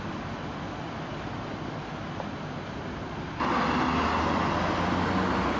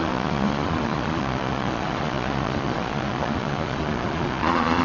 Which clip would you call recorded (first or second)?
first